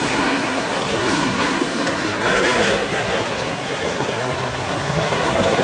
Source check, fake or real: fake